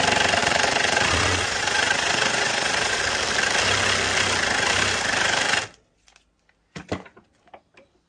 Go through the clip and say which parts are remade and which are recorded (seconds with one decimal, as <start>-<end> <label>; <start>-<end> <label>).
0.0-0.4 recorded; 0.4-3.0 remade; 3.0-8.1 recorded